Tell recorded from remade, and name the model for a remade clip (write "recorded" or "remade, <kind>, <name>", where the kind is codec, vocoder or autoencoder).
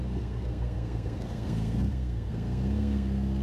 remade, codec, SNAC